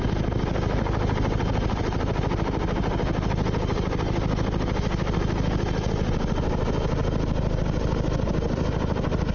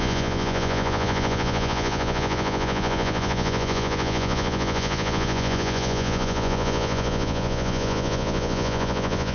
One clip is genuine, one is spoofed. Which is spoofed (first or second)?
second